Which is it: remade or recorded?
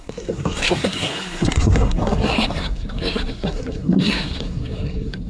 remade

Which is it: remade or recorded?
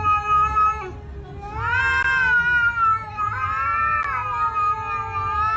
recorded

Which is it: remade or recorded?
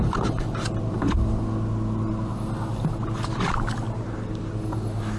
recorded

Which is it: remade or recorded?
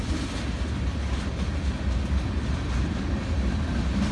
recorded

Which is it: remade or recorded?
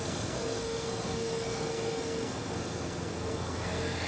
remade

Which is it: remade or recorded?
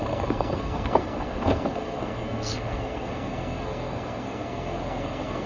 remade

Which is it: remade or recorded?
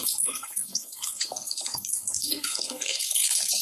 remade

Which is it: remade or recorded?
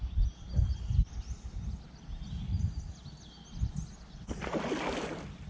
recorded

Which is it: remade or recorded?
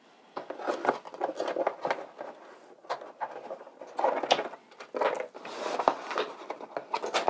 recorded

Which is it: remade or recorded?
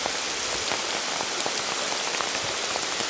recorded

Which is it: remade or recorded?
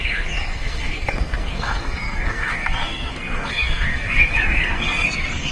remade